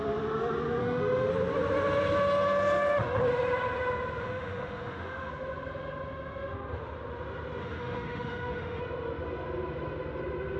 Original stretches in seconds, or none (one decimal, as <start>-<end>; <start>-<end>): 0.0-0.8; 1.3-4.2; 5.3-7.6; 8.8-10.6